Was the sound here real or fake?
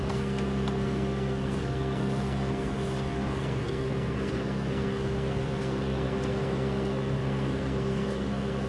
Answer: fake